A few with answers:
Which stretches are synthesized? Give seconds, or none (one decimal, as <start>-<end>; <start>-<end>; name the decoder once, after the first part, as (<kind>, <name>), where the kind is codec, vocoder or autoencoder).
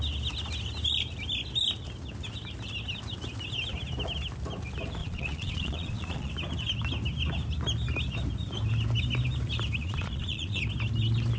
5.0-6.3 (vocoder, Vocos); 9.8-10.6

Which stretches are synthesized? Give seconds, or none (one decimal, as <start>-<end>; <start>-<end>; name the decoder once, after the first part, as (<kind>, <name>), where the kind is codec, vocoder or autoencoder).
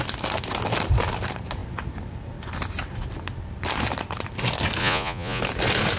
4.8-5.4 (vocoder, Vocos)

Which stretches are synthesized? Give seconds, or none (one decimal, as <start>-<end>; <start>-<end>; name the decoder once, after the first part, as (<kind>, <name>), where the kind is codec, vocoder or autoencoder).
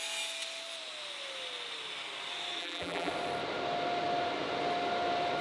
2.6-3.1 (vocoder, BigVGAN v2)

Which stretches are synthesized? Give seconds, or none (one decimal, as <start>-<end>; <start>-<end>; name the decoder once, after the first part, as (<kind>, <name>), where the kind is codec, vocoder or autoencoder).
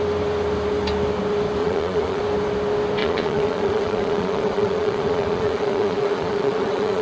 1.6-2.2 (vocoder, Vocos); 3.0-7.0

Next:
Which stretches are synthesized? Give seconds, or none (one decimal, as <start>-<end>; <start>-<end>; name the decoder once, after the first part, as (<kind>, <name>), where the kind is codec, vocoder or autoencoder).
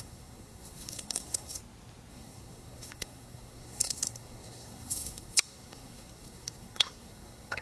0.0-1.6 (codec, SNAC); 2.1-7.6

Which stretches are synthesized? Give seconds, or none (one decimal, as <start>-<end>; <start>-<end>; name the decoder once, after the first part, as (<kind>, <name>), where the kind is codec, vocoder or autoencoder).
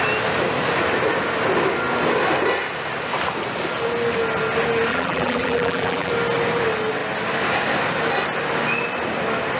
4.9-6.1 (vocoder, BigVGAN v2)